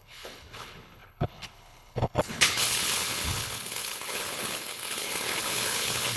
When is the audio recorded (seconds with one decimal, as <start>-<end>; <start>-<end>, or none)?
none